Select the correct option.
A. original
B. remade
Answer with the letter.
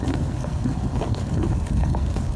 B